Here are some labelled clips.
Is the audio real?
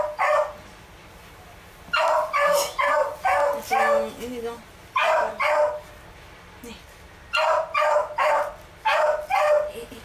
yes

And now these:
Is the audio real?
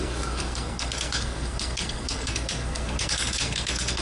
no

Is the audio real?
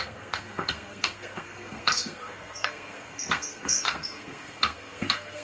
no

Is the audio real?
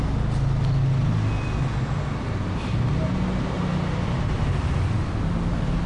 yes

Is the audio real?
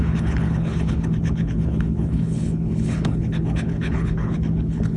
no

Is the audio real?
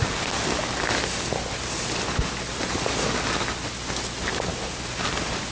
yes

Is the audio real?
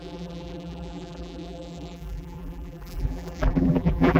no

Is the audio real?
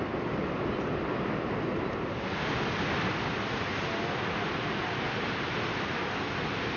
yes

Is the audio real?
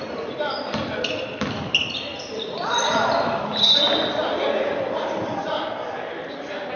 no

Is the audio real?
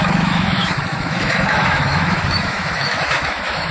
no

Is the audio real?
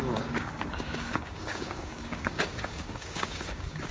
no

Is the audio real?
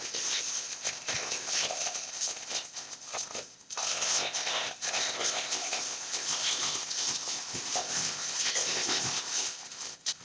no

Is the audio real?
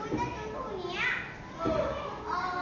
yes